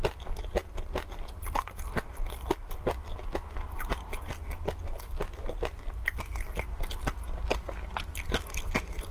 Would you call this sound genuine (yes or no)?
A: yes